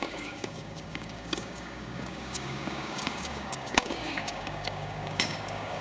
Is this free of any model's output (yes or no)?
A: no